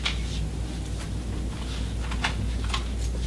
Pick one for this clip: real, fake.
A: real